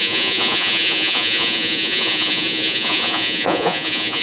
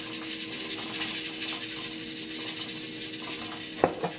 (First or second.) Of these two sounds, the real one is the second